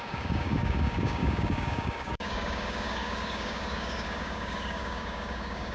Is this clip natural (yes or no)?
no